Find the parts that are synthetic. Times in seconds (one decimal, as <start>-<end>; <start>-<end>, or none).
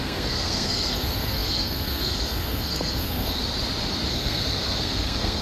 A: 0.0-3.4; 4.1-5.4